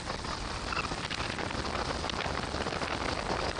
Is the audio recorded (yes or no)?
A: yes